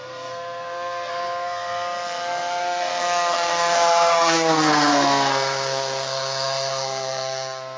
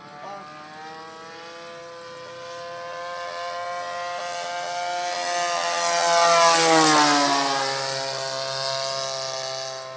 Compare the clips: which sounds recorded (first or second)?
second